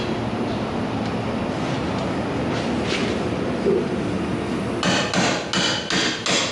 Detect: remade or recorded recorded